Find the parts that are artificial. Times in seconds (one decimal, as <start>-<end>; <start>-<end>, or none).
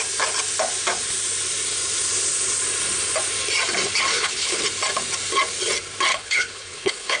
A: 4.1-4.6; 6.1-7.2